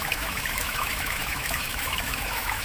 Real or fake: fake